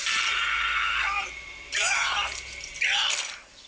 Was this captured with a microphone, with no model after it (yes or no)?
no